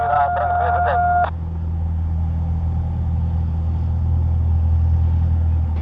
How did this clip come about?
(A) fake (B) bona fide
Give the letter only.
B